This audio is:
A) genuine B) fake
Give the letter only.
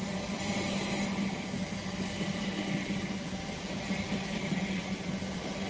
A